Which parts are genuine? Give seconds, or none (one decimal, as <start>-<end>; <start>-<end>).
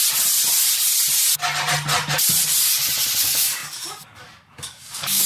0.0-3.2